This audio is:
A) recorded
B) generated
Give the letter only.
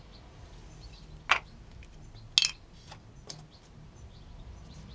A